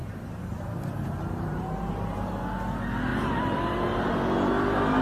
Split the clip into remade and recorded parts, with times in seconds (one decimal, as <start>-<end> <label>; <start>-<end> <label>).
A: 0.0-2.4 remade; 2.4-3.1 recorded; 3.1-4.1 remade; 4.1-5.0 recorded